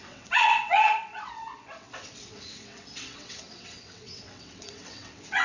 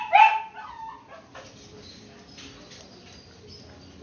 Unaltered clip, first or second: second